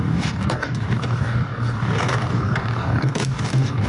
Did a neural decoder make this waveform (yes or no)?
yes